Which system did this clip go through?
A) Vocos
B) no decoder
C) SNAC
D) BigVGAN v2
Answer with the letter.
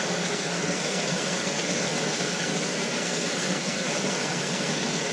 C